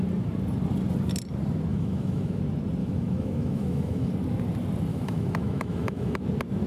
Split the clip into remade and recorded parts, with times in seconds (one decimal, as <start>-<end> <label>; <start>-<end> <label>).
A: 0.0-1.7 recorded; 1.7-2.4 remade; 2.4-2.8 recorded; 2.8-4.1 remade; 4.1-4.9 recorded; 4.9-6.2 remade; 6.2-6.7 recorded

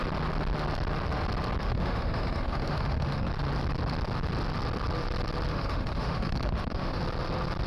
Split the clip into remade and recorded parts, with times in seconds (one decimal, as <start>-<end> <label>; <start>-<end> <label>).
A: 0.0-1.6 recorded; 1.6-3.3 remade; 3.3-5.5 recorded; 5.5-7.0 remade; 7.0-7.7 recorded

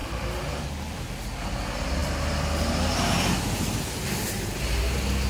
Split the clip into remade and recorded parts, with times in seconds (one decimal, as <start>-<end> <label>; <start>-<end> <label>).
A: 0.0-5.3 recorded

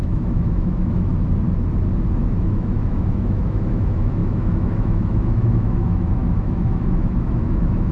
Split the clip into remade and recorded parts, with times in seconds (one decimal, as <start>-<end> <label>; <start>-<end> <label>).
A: 0.0-1.1 remade; 1.1-2.2 recorded; 2.2-7.9 remade

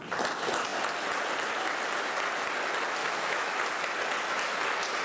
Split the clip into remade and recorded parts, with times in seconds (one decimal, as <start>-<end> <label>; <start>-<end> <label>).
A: 0.0-3.0 recorded; 3.0-3.6 remade; 3.6-5.0 recorded

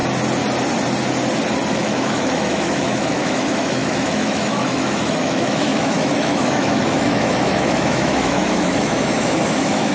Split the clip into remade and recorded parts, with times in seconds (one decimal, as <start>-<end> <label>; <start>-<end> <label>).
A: 0.0-1.7 recorded; 1.7-9.9 remade

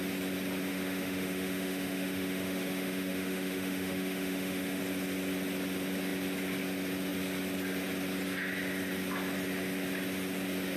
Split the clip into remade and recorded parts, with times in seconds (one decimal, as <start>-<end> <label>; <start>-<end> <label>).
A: 0.0-0.7 recorded; 0.7-4.8 remade; 4.8-10.8 recorded